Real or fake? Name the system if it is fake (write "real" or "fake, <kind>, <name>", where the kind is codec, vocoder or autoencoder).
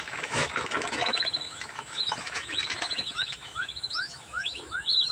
fake, autoencoder, DAC-VAE